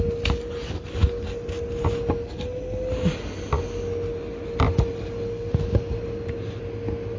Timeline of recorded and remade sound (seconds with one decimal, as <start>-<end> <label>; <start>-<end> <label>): 0.0-7.2 recorded